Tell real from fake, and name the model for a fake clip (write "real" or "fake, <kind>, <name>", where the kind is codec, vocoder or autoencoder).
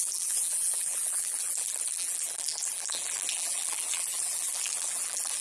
fake, vocoder, BigVGAN v2